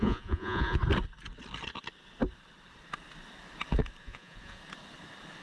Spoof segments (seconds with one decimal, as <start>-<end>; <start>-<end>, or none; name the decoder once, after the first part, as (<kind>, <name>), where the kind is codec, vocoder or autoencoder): 0.0-0.8 (vocoder, Vocos); 4.0-4.6